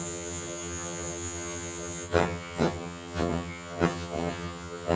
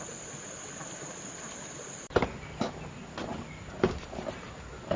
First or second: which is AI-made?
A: first